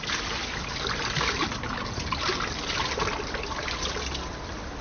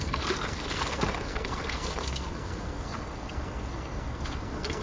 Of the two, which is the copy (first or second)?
second